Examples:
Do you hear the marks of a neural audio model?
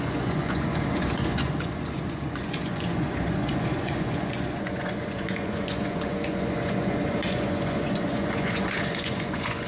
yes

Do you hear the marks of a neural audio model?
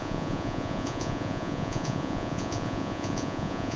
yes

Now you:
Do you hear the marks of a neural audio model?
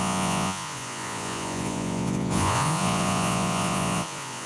yes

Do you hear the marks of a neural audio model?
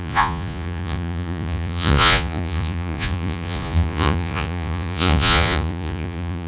yes